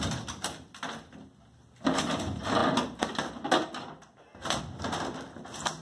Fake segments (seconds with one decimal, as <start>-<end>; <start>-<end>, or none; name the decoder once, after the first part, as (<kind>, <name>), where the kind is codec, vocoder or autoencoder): none